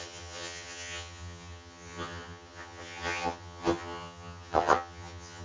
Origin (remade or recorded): remade